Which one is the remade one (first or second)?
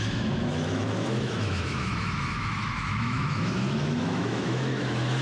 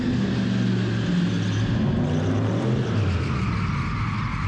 first